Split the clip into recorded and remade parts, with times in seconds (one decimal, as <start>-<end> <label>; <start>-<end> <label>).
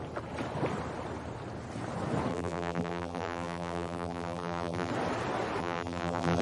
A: 0.0-2.3 recorded; 2.3-4.9 remade; 4.9-5.6 recorded; 5.6-6.4 remade